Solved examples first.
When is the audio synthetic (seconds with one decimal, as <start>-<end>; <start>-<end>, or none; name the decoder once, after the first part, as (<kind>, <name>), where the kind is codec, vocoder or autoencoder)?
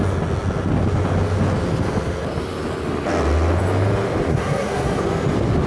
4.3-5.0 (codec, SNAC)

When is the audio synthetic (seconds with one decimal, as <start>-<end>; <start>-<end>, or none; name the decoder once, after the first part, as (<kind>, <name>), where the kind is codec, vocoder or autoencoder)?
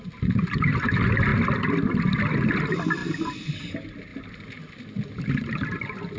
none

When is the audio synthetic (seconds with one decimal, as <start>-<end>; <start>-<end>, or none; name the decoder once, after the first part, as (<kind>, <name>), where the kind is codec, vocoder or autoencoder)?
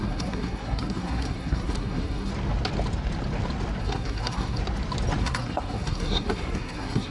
0.0-2.3 (codec, SNAC); 3.8-4.6; 5.2-7.1